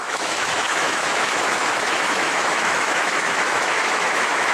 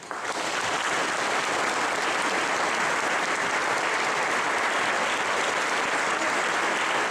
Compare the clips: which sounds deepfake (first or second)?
first